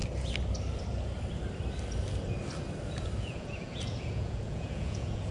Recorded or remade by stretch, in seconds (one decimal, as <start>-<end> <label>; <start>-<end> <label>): 0.0-3.2 recorded; 3.2-5.3 remade